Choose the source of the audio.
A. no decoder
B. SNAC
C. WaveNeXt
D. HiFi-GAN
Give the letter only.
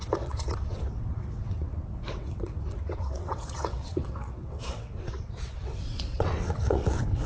C